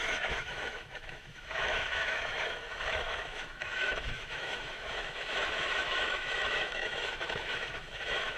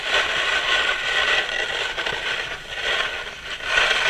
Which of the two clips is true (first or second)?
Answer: second